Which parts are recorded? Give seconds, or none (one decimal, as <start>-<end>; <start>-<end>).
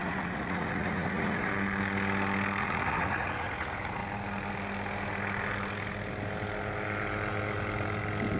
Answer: 1.5-2.6; 4.0-8.4